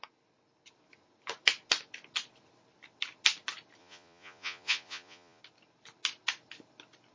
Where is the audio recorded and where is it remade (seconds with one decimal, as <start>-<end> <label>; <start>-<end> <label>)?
0.0-3.8 recorded; 3.8-5.4 remade; 5.4-7.1 recorded